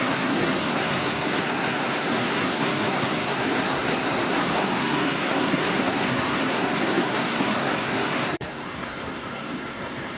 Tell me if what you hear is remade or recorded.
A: remade